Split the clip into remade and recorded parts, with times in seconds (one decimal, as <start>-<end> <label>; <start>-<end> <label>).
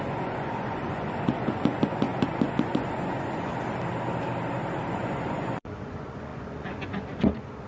0.0-3.5 remade; 3.5-4.9 recorded; 4.9-7.7 remade